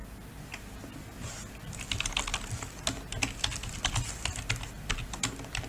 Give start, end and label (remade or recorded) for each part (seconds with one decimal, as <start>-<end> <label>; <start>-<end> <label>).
0.0-5.7 recorded